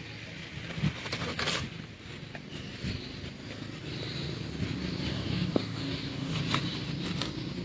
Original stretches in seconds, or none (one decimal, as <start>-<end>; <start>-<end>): 0.0-5.1; 6.4-7.6